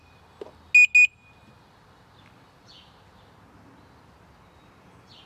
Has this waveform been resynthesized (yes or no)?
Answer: no